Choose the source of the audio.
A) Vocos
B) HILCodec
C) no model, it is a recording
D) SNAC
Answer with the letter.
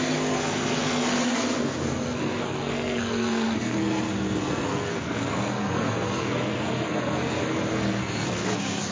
D